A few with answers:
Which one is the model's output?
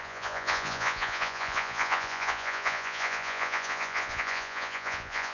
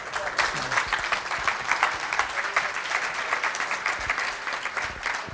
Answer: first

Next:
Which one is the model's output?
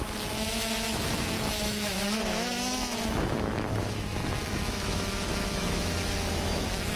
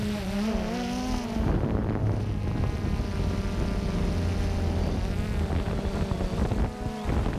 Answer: first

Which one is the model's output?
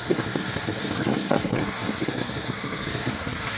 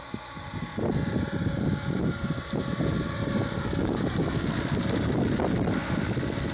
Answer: first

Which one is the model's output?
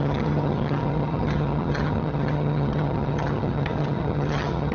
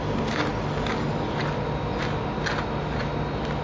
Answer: first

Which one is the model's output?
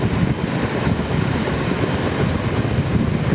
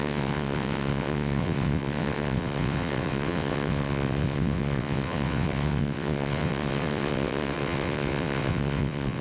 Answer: second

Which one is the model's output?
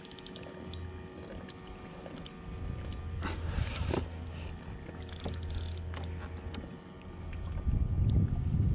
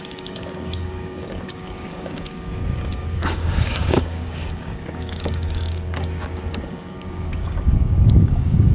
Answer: second